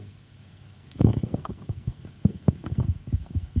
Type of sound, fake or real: fake